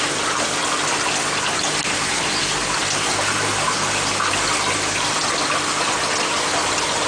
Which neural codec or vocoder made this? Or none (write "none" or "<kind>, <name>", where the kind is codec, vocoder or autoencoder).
none